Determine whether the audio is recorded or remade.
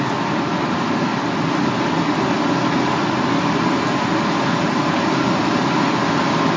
recorded